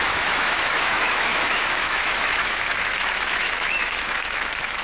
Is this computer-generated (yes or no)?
yes